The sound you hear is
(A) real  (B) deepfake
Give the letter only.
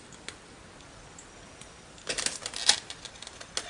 A